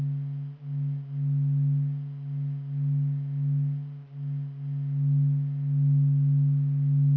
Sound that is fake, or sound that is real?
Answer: real